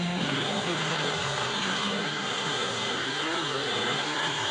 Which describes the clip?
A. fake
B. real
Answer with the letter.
A